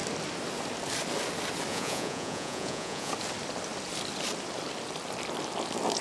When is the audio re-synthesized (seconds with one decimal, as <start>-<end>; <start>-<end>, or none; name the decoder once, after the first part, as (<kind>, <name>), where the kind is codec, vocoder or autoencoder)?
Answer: 1.7-3.1 (vocoder, Vocos)